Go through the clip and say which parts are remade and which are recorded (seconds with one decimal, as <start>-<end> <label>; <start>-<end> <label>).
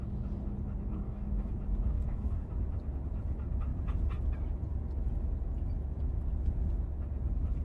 0.0-0.9 recorded; 0.9-1.5 remade; 1.5-1.9 recorded; 1.9-2.5 remade; 2.5-7.6 recorded